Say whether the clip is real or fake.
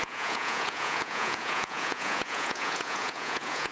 fake